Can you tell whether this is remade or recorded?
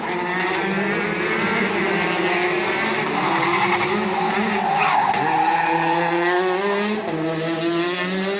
recorded